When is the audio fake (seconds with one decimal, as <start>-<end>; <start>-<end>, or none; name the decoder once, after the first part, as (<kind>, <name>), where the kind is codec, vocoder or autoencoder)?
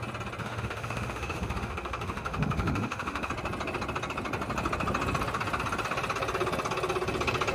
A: 0.4-3.3 (autoencoder, DAC-VAE)